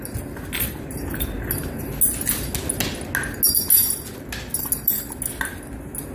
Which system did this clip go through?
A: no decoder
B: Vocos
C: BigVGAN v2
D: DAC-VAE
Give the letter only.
A